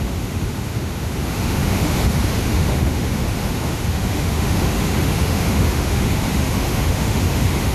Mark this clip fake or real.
fake